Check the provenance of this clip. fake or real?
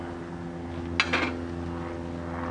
real